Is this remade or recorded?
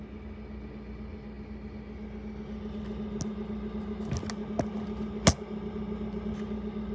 recorded